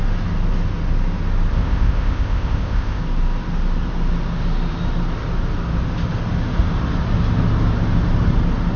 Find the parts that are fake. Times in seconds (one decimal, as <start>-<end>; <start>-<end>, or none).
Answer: 1.5-3.0